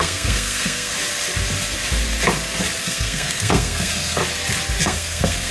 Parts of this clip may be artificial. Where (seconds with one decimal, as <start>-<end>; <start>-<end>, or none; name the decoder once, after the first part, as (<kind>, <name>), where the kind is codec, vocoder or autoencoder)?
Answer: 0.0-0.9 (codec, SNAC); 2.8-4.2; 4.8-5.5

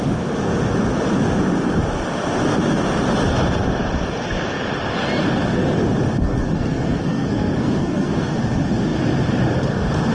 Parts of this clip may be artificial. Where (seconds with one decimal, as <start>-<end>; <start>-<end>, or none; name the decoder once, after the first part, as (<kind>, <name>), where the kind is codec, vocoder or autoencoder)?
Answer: 6.1-8.3 (codec, SNAC)

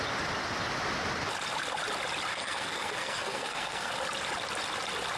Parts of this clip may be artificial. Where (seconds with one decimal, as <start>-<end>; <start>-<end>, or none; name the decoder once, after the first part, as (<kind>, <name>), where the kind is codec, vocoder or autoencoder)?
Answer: 2.3-3.9 (codec, SNAC)

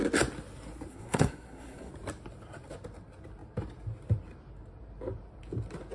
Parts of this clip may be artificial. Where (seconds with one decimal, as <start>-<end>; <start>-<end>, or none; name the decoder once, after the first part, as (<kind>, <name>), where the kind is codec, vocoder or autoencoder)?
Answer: 0.9-1.9 (codec, SNAC)

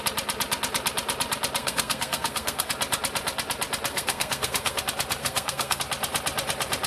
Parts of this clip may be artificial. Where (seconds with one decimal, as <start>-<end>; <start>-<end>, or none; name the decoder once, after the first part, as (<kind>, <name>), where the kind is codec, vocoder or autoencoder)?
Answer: 1.6-2.7 (codec, SNAC); 3.9-4.8; 5.2-5.8

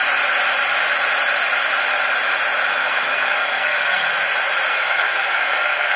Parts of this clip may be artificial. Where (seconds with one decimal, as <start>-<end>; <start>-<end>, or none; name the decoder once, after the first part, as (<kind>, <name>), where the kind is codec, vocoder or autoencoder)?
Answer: 2.7-4.1 (codec, SNAC); 4.7-6.0